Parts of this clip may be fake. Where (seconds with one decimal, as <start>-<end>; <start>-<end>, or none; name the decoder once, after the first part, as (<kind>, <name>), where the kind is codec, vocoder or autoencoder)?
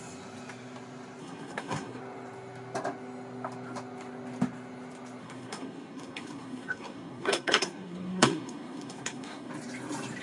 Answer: 1.2-2.0 (codec, SNAC); 5.2-9.5